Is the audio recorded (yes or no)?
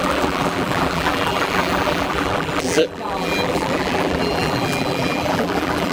no